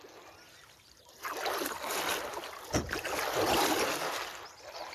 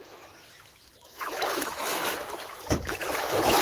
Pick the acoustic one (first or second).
first